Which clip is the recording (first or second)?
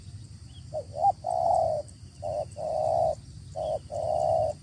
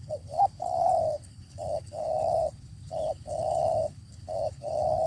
first